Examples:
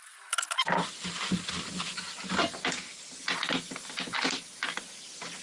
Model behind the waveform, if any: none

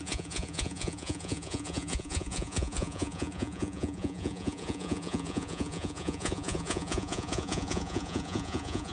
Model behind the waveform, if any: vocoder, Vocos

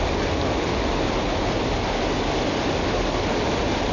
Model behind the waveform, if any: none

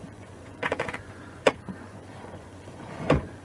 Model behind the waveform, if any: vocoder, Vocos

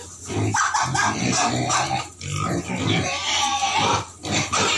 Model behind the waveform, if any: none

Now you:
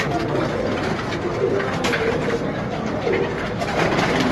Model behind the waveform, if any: none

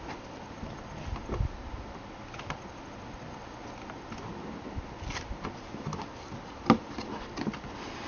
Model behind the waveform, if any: none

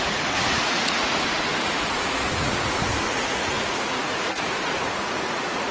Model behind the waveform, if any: vocoder, Vocos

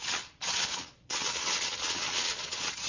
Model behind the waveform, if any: vocoder, Vocos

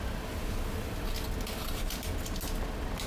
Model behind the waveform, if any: none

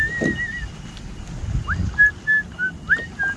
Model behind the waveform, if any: none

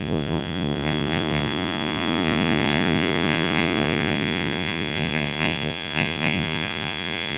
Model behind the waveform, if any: vocoder, Vocos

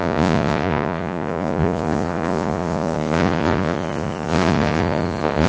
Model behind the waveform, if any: vocoder, Vocos